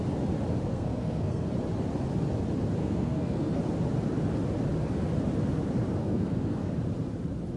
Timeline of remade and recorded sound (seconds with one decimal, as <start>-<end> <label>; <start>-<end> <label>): 0.0-0.7 recorded; 0.7-1.5 remade; 1.5-2.8 recorded; 2.8-3.6 remade; 3.6-6.0 recorded; 6.0-6.7 remade; 6.7-7.6 recorded